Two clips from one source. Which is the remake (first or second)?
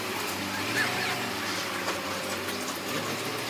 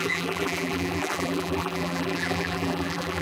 second